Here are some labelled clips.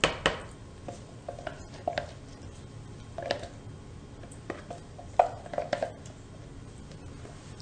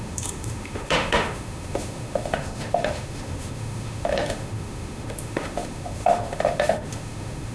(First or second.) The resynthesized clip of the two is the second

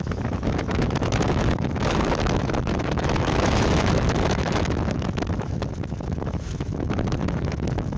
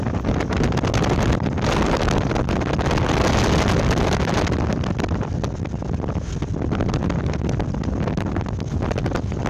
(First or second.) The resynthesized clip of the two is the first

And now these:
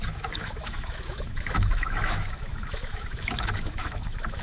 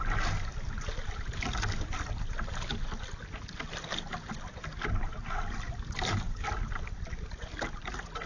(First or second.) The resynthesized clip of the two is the first